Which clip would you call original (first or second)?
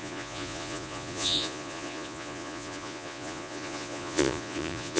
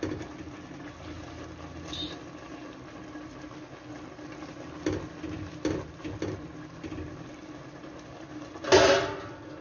second